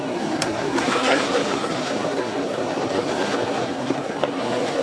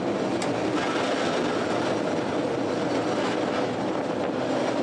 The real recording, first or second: second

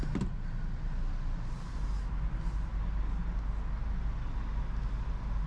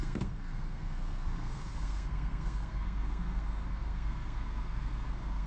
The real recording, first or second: first